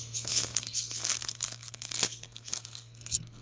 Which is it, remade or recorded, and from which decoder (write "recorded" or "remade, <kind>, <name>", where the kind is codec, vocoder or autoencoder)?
remade, codec, SNAC